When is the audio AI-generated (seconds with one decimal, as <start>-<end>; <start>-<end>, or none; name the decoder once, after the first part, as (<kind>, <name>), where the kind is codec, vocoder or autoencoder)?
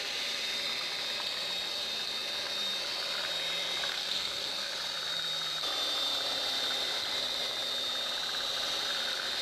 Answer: 3.9-4.7 (codec, SNAC)